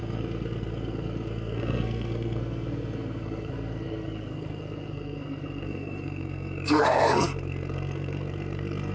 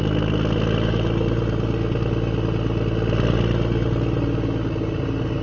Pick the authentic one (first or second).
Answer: second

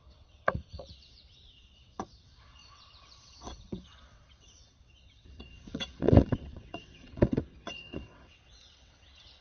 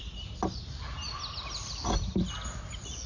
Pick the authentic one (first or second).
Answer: second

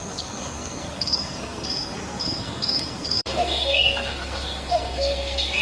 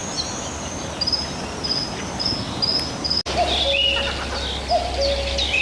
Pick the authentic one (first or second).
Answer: second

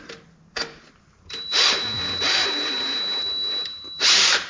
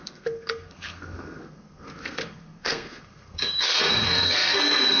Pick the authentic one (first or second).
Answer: first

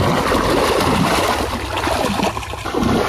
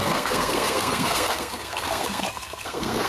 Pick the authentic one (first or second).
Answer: first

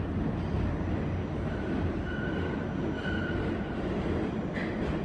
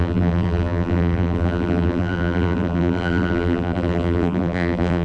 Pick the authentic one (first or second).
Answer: first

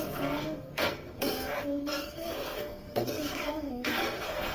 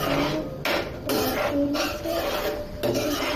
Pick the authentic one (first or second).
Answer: second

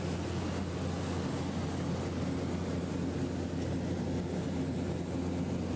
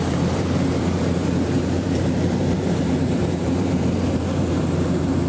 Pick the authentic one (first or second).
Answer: first